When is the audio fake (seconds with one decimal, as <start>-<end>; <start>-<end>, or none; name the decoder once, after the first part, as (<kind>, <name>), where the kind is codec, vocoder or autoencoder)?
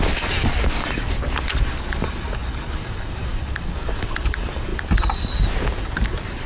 none